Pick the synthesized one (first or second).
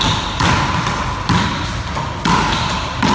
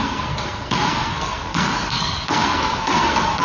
second